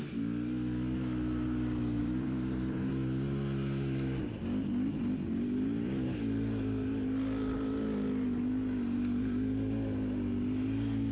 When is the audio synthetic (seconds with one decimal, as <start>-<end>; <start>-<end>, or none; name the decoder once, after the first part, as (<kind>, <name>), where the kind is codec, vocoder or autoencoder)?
2.0-2.9 (vocoder, BigVGAN v2)